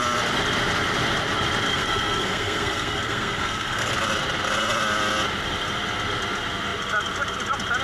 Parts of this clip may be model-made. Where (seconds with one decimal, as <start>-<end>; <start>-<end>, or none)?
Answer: 1.7-3.9